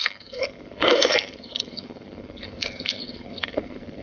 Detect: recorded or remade remade